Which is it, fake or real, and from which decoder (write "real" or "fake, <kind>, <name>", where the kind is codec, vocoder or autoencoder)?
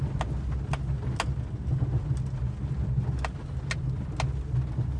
real